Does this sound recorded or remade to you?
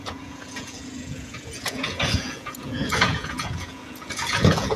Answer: remade